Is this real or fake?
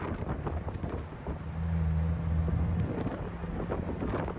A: real